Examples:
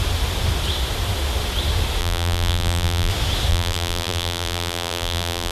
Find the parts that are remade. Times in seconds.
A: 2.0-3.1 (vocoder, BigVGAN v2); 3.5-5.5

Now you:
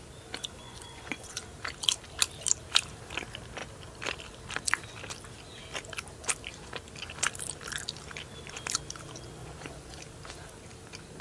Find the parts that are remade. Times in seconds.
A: 0.6-1.4 (vocoder, Vocos); 9.4-10.0

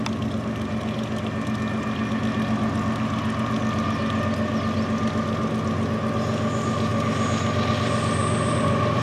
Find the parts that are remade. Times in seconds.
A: none

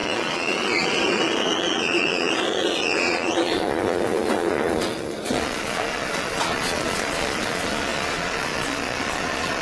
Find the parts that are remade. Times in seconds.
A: 0.0-9.6 (vocoder, Vocos)

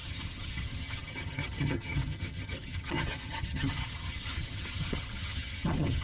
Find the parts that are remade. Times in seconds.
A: 0.0-6.0 (vocoder, HiFi-GAN)

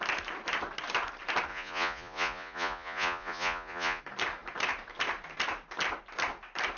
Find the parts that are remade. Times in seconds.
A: 1.5-4.0 (vocoder, Vocos)

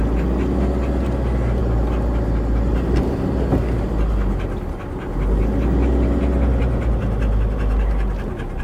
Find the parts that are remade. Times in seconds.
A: none